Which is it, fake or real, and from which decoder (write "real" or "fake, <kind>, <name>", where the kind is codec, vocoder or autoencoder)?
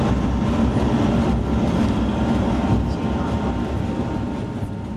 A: real